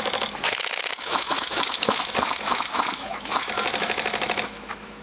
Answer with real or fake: fake